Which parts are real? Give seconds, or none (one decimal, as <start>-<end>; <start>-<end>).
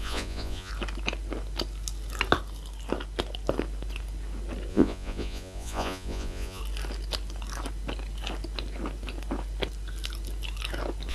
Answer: 0.7-4.7; 6.6-11.1